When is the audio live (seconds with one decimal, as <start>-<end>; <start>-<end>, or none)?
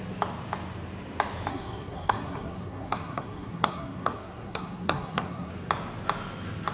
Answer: 0.0-1.5; 5.5-6.7